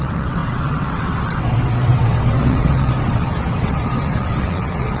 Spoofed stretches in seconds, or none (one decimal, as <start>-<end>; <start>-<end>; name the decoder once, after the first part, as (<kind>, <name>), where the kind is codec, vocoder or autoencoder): 0.0-5.0 (vocoder, WaveNeXt)